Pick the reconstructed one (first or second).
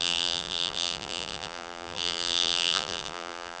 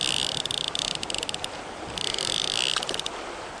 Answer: first